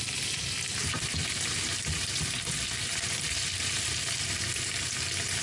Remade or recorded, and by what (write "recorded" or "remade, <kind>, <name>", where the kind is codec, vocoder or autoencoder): recorded